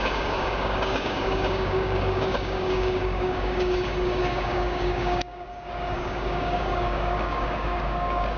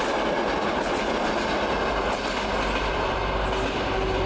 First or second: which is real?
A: second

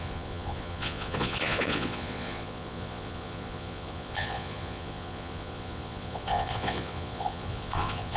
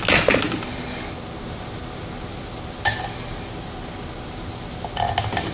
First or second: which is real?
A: second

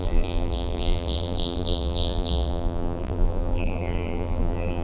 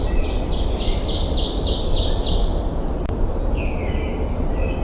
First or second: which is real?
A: second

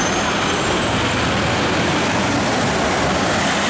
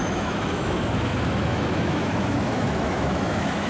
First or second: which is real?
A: first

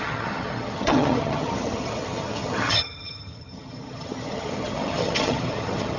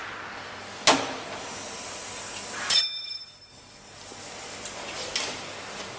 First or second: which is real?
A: second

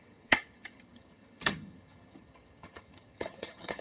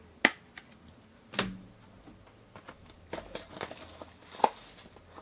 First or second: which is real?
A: second